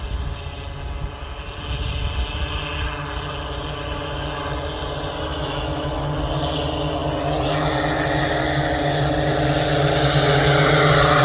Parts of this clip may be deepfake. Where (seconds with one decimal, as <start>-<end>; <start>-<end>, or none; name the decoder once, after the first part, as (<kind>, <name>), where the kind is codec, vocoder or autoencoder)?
5.3-6.1 (autoencoder, DAC-VAE)